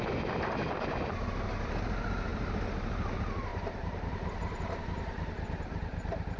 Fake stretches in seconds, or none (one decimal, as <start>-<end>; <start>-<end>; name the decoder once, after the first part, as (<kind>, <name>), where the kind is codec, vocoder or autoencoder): 2.3-3.1 (vocoder, BigVGAN v2); 3.5-6.4

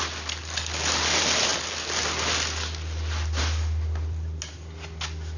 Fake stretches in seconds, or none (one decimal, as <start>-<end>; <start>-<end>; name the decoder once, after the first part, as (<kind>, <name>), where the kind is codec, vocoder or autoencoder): none

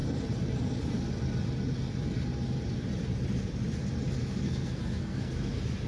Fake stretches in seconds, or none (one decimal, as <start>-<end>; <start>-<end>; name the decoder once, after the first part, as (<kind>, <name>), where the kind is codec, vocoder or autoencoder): 4.2-5.5 (codec, SNAC)

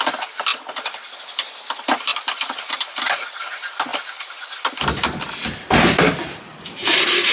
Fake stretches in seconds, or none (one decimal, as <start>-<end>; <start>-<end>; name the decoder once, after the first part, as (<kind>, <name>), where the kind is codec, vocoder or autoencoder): 0.0-0.5 (vocoder, BigVGAN v2); 1.2-7.3

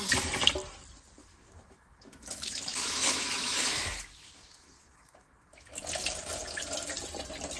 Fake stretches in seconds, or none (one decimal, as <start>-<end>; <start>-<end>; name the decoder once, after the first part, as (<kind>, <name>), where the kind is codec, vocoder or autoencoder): 1.2-5.8 (autoencoder, DAC-VAE)